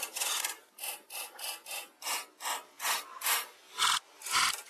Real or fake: real